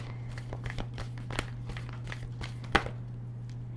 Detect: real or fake real